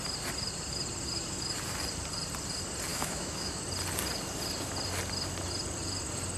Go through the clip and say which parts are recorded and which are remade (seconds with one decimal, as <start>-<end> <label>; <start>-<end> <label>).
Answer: 0.0-2.9 recorded; 2.9-3.6 remade; 3.6-6.4 recorded